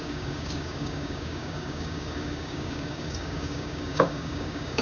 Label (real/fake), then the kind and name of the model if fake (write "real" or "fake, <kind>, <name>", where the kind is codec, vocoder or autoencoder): fake, codec, DAC